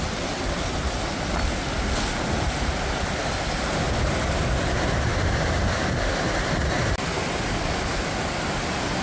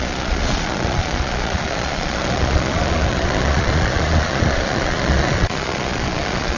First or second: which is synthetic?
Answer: second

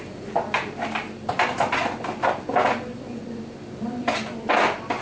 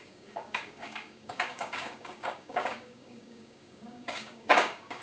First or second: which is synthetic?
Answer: second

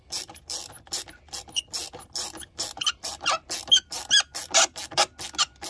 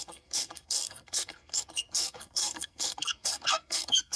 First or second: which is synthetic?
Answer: second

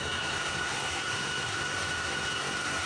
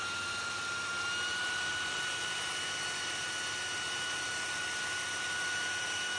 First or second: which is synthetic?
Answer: first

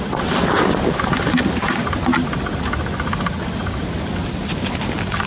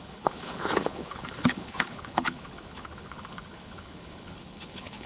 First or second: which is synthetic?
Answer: second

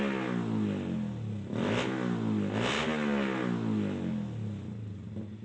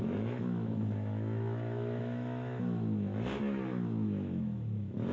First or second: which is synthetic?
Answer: second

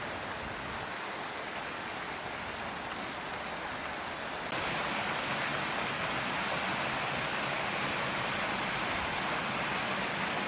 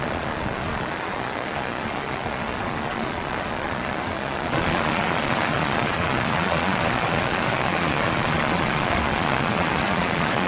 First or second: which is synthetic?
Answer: second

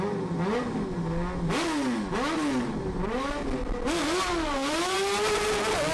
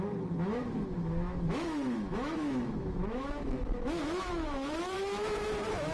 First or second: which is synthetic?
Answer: second